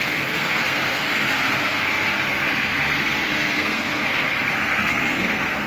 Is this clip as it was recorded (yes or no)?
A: no